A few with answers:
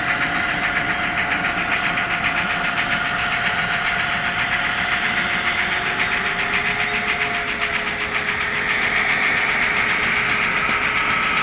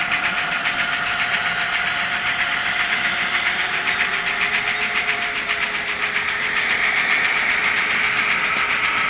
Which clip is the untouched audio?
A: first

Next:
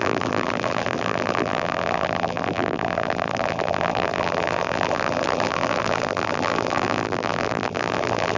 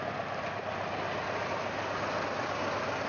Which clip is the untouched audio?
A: second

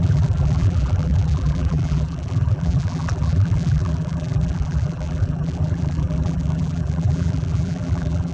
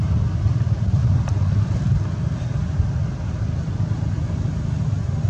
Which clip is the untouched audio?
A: second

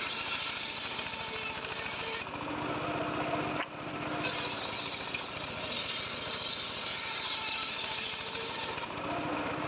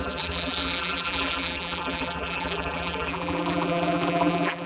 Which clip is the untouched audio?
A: first